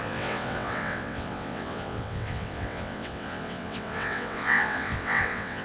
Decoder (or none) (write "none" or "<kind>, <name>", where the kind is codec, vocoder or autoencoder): vocoder, WaveNeXt